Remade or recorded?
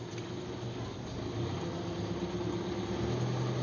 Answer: recorded